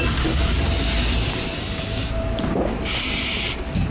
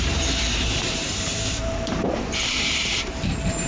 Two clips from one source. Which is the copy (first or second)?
second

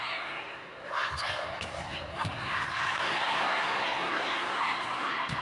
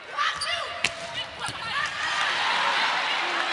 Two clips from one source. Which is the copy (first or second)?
first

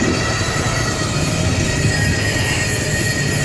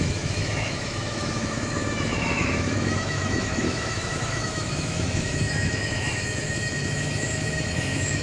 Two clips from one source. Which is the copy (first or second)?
second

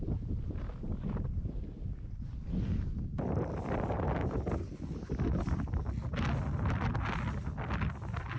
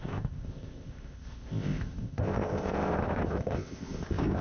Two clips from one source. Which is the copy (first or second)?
second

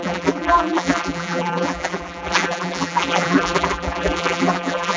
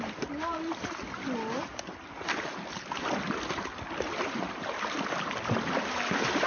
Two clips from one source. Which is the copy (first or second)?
first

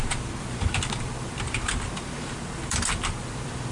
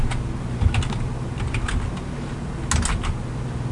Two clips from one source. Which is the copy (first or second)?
first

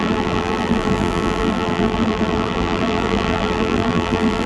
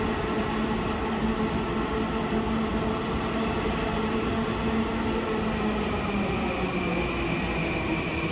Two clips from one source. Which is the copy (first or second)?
first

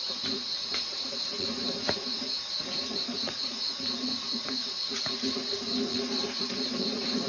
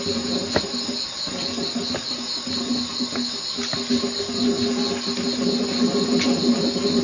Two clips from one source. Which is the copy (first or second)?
first